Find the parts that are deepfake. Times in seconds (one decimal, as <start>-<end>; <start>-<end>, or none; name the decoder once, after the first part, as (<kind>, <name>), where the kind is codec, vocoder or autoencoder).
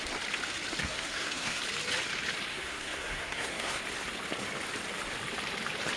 0.8-1.6 (codec, SNAC); 2.5-3.8